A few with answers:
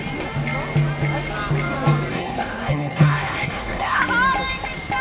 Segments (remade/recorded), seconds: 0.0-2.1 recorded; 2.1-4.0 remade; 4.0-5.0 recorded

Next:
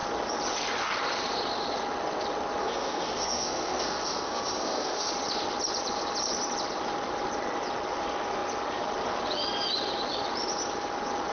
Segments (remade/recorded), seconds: 0.0-2.6 recorded; 2.6-5.1 remade; 5.1-11.3 recorded

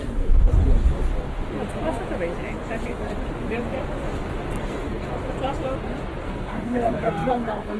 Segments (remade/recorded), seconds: 0.0-0.5 remade; 0.5-4.5 recorded; 4.5-5.1 remade; 5.1-6.2 recorded; 6.2-7.8 remade

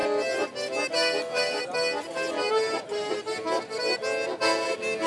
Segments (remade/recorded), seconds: 0.0-5.1 recorded

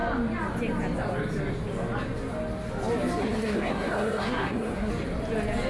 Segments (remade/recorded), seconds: 0.0-3.2 recorded; 3.2-4.9 remade; 4.9-5.7 recorded

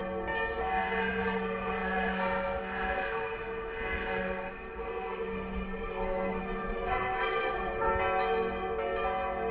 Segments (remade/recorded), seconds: 0.0-0.6 recorded; 0.6-7.9 remade; 7.9-9.5 recorded